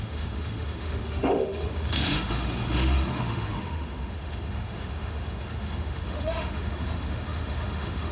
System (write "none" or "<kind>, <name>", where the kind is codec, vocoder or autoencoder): autoencoder, DAC-VAE